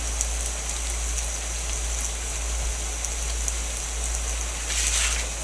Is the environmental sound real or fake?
real